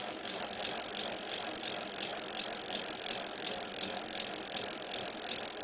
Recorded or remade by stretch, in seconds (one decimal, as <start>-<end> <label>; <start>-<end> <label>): 0.0-5.6 recorded

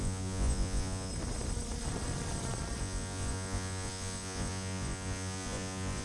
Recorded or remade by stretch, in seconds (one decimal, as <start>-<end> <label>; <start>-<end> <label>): 0.0-1.1 remade; 1.1-2.8 recorded; 2.8-6.0 remade

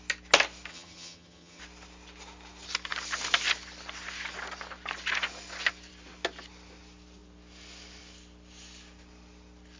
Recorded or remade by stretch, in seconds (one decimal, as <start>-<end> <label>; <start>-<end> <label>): 0.0-0.7 recorded; 0.7-1.6 remade; 1.6-9.8 recorded

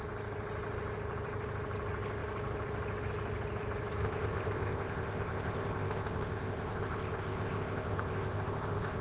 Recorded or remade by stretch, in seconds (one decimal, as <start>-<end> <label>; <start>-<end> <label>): 0.0-4.0 recorded; 4.0-9.0 remade

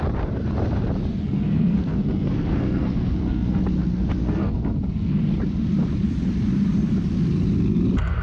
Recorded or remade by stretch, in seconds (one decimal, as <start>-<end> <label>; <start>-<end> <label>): 0.0-1.1 recorded; 1.1-3.6 remade; 3.6-4.2 recorded; 4.2-5.2 remade; 5.2-8.2 recorded